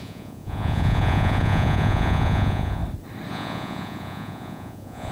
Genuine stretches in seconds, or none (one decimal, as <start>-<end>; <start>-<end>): 2.8-3.3